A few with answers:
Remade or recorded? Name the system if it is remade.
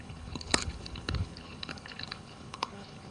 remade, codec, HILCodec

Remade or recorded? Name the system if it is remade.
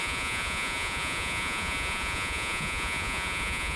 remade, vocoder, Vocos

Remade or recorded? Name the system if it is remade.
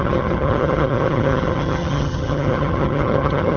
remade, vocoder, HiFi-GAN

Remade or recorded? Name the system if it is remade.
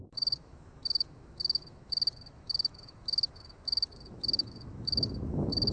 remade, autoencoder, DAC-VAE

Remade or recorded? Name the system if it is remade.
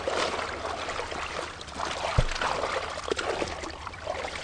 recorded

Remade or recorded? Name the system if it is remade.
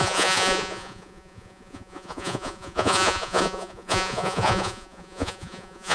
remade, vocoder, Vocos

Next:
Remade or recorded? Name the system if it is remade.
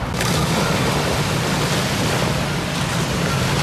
recorded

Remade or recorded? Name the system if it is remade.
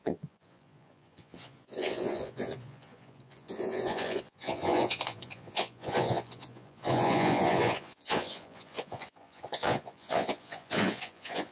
remade, vocoder, Vocos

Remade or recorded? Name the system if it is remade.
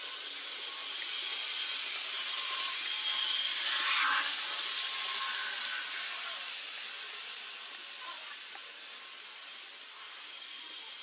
recorded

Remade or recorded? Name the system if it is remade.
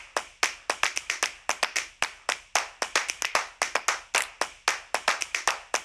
recorded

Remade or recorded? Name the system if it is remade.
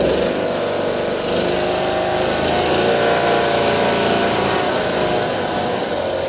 recorded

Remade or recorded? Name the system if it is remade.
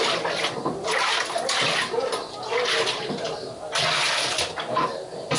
recorded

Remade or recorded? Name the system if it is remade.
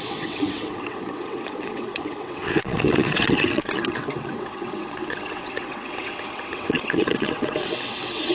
remade, vocoder, WaveNeXt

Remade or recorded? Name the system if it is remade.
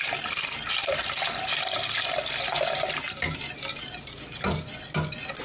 recorded